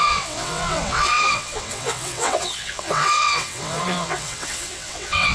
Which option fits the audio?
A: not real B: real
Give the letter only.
A